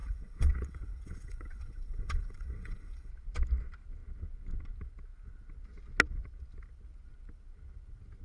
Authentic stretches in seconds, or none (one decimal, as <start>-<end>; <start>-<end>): 3.1-8.2